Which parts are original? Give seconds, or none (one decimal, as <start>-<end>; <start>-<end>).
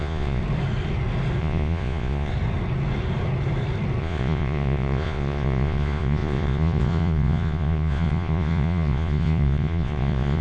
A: 0.4-1.4; 2.3-4.0